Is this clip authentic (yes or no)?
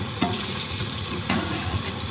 no